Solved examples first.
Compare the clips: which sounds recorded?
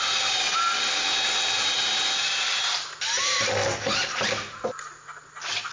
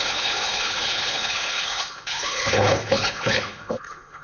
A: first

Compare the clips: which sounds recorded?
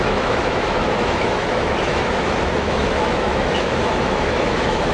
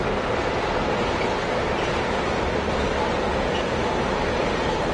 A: second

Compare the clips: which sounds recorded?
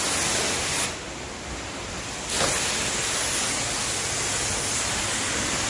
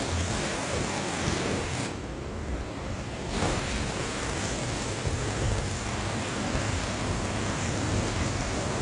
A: first